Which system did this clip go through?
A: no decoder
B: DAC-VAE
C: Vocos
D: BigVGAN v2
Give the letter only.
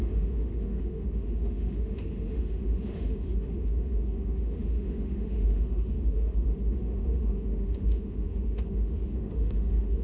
B